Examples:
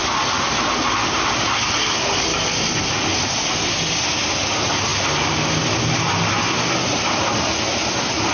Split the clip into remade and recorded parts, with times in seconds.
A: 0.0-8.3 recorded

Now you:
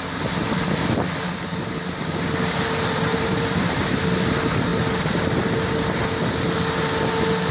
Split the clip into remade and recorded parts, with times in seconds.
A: 0.0-3.1 recorded; 3.1-3.8 remade; 3.8-7.5 recorded

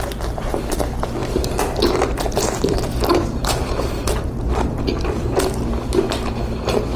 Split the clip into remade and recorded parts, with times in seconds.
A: 0.0-1.2 recorded; 1.2-5.4 remade; 5.4-7.0 recorded